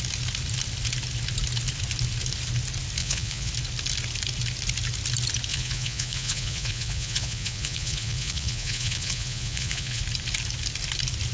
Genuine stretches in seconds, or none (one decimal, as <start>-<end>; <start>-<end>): 0.0-3.0; 3.5-5.5; 10.0-11.3